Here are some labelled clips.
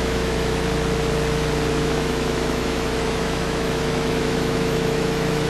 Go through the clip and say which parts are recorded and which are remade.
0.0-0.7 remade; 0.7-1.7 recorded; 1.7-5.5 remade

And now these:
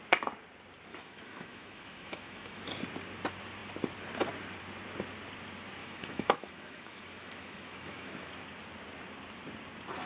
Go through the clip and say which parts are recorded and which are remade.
0.0-0.9 recorded; 0.9-2.6 remade; 2.6-5.8 recorded; 5.8-8.3 remade; 8.3-10.1 recorded

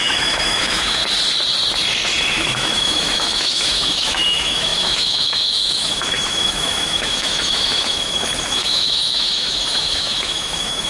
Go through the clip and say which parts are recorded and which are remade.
0.0-1.0 remade; 1.0-2.3 recorded; 2.3-10.9 remade

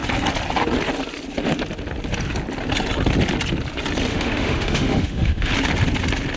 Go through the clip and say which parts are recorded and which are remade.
0.0-4.1 recorded; 4.1-5.5 remade; 5.5-6.4 recorded